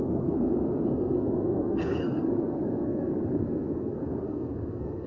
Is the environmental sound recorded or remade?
remade